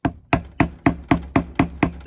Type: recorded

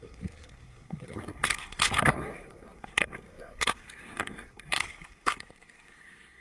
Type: remade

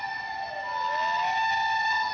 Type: recorded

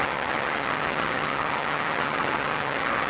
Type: remade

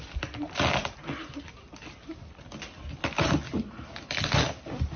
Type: recorded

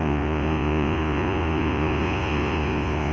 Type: remade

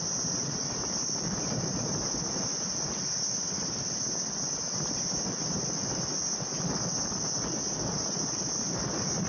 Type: recorded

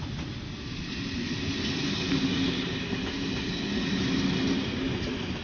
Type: recorded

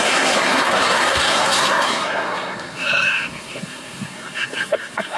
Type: remade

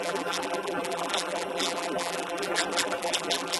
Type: remade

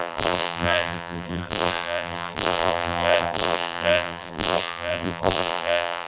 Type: remade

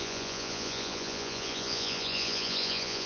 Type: remade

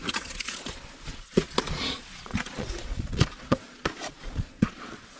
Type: remade